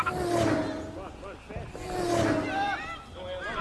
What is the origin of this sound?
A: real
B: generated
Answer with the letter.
A